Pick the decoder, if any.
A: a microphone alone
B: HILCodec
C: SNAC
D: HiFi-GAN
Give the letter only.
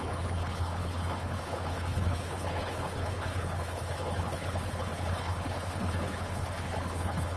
B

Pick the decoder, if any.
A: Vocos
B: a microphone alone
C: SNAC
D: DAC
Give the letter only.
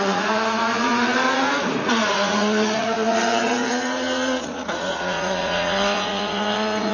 A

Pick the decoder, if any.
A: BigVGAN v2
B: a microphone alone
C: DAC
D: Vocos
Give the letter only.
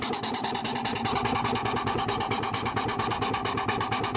B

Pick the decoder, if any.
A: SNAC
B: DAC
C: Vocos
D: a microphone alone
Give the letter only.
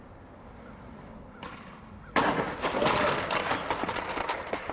D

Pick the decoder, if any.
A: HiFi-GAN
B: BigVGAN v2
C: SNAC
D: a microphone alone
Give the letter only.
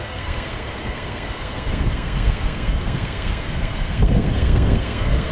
C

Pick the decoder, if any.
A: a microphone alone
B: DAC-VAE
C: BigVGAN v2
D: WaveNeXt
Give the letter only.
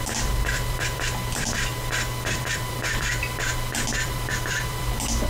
C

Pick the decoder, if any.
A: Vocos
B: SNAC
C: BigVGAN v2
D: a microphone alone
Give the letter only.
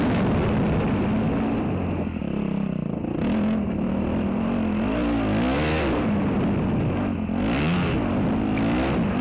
D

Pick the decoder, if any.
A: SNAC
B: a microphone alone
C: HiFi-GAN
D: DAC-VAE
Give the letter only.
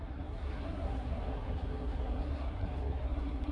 A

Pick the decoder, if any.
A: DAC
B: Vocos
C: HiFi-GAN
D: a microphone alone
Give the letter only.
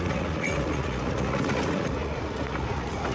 B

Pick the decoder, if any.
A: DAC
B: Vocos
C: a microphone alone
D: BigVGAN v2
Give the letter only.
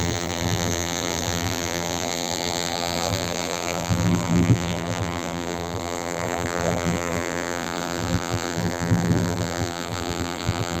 D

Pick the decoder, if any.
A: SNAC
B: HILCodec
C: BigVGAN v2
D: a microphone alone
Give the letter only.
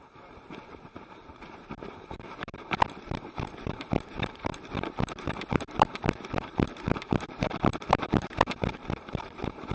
C